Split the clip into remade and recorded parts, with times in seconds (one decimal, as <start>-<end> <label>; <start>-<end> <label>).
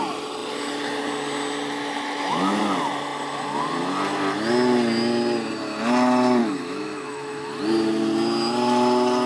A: 0.0-1.8 recorded; 1.8-2.6 remade; 2.6-6.4 recorded; 6.4-7.6 remade; 7.6-9.3 recorded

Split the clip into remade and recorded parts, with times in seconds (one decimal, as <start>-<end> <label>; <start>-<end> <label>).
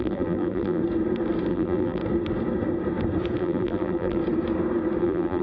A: 0.0-0.8 remade; 0.8-1.5 recorded; 1.5-2.0 remade; 2.0-3.4 recorded; 3.4-4.2 remade; 4.2-5.0 recorded; 5.0-5.4 remade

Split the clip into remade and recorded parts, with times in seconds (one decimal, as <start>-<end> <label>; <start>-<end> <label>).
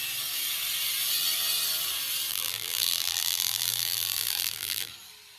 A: 0.0-2.3 recorded; 2.3-4.9 remade; 4.9-5.4 recorded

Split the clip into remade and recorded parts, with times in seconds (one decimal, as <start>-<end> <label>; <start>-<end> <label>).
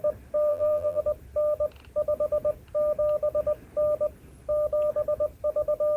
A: 0.0-0.5 recorded; 0.5-1.0 remade; 1.0-6.0 recorded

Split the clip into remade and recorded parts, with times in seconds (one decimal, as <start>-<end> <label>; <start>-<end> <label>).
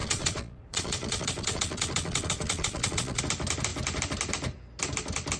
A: 0.0-3.2 remade; 3.2-5.4 recorded